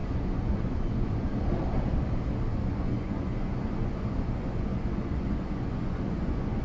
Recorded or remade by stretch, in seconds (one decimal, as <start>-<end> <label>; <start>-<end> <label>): 0.0-1.3 remade; 1.3-2.5 recorded; 2.5-6.6 remade